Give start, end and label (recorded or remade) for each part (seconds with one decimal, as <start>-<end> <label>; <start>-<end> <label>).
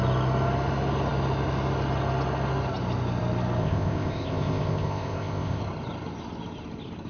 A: 0.0-3.6 recorded; 3.6-5.6 remade; 5.6-7.1 recorded